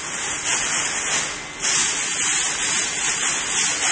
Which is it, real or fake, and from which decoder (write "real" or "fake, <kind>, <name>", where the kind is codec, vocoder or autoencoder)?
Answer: real